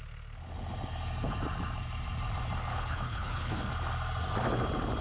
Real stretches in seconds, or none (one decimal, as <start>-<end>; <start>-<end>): 0.0-2.7; 3.7-5.0